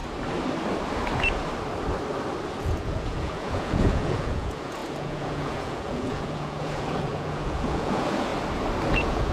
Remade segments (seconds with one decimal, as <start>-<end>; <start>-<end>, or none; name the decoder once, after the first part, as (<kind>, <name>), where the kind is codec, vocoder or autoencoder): 2.6-8.3 (vocoder, Vocos); 8.9-9.3